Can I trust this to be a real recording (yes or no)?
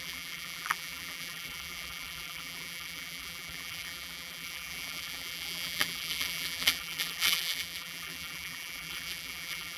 no